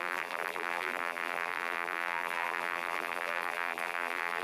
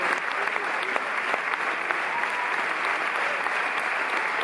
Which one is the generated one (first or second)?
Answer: first